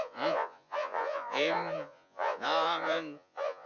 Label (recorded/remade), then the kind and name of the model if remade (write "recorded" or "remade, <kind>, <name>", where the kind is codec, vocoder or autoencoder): remade, vocoder, Vocos